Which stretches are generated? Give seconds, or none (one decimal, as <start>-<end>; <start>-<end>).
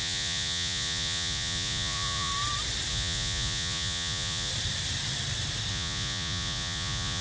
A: 0.0-2.3; 2.9-4.5; 5.7-7.2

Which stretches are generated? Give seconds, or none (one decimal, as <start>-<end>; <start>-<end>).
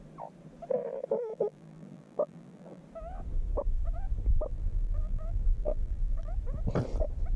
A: 1.3-2.8; 4.5-6.3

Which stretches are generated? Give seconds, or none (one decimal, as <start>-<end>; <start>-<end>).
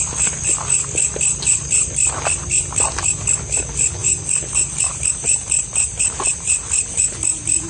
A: 4.0-6.0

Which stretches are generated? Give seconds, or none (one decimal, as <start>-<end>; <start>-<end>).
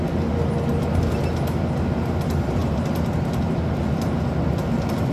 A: none